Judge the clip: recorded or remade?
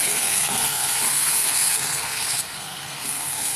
remade